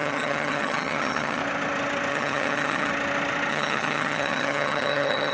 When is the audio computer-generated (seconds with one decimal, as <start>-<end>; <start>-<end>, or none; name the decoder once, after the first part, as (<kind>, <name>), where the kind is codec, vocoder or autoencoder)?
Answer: 0.0-1.4 (vocoder, HiFi-GAN); 2.1-2.9; 3.5-5.3